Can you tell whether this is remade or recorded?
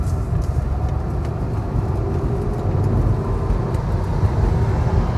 recorded